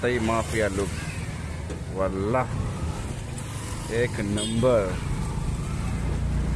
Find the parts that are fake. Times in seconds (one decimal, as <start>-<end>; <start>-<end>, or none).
none